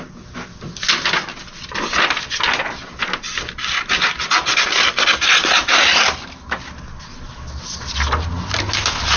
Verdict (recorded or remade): recorded